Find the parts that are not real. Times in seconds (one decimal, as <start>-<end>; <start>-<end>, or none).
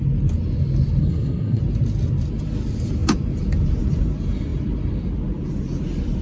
1.0-1.6